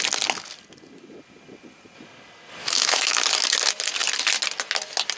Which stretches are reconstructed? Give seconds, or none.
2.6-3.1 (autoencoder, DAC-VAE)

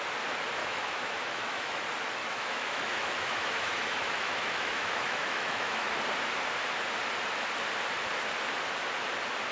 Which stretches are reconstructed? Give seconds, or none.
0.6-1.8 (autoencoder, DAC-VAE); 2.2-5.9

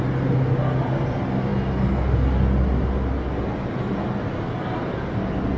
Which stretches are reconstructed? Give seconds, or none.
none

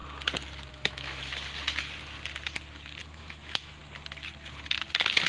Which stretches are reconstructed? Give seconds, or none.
0.7-1.3 (autoencoder, DAC-VAE); 3.0-3.8